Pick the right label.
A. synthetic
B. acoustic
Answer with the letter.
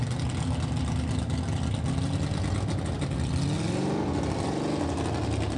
B